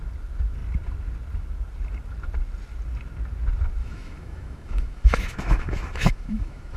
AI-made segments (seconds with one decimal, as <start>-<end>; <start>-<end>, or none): 3.8-6.8